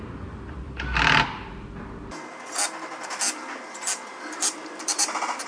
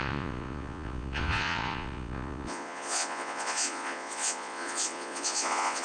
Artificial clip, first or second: second